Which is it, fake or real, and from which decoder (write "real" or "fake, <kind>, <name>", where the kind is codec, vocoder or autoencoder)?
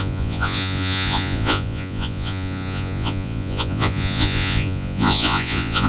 fake, vocoder, Vocos